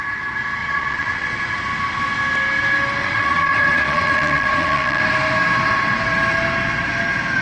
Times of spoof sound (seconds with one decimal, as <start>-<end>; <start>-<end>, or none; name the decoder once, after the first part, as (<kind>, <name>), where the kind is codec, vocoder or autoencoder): 0.6-1.3 (vocoder, Vocos); 3.0-5.0